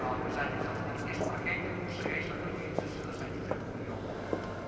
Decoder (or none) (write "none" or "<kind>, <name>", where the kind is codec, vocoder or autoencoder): none